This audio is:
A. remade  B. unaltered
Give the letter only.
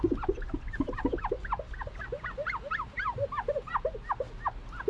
B